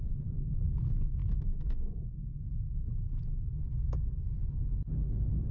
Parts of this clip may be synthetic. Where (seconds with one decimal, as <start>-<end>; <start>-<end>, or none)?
0.0-1.2; 4.5-5.5